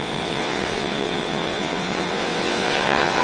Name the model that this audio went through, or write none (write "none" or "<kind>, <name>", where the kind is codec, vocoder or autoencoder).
vocoder, WaveNeXt